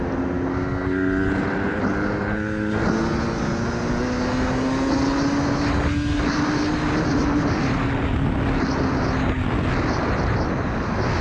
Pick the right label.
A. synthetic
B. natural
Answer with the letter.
B